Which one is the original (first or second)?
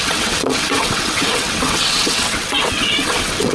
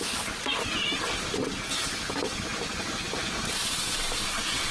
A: second